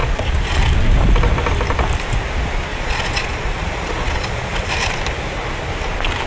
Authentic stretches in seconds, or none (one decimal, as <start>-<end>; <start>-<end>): 0.6-2.7; 4.7-6.3